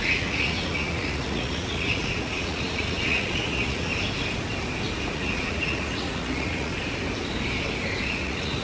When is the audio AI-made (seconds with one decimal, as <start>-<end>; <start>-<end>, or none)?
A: 0.0-3.9; 5.1-6.7; 8.0-8.6